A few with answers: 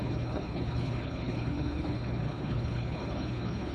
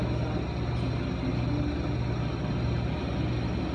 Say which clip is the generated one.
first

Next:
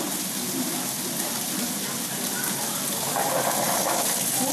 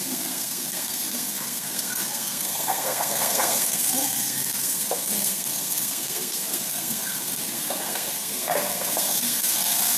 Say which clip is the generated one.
second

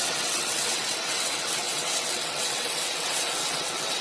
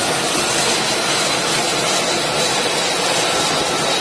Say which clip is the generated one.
first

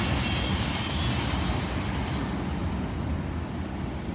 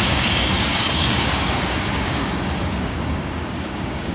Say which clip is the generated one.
second